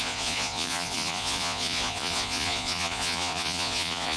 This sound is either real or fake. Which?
fake